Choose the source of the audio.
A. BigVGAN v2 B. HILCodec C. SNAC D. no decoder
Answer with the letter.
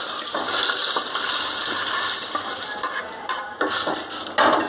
D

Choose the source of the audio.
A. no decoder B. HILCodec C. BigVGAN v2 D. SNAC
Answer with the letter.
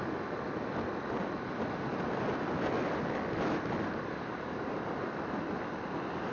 A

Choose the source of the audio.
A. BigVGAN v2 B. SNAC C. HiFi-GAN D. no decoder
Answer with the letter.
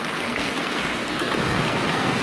B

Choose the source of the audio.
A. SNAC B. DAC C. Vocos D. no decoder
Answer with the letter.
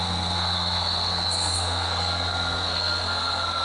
A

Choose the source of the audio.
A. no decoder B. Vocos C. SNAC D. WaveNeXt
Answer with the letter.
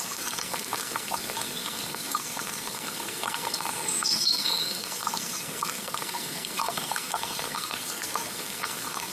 C